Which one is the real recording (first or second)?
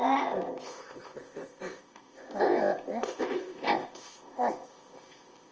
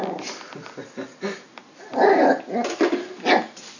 second